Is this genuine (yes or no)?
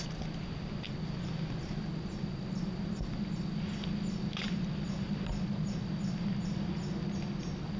yes